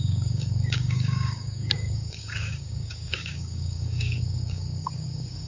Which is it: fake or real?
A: fake